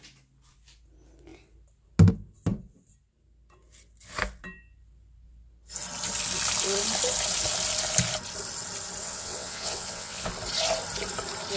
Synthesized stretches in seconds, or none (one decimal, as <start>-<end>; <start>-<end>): 9.0-10.3